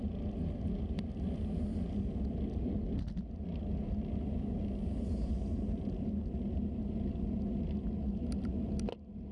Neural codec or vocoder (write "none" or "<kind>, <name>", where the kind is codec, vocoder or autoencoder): none